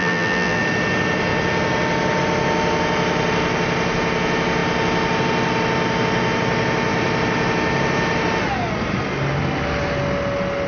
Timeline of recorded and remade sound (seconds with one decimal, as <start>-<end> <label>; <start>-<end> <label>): 0.0-0.6 remade; 0.6-10.7 recorded